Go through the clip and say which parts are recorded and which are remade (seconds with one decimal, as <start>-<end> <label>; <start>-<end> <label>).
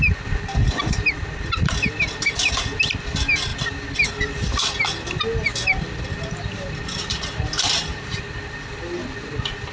0.0-9.7 recorded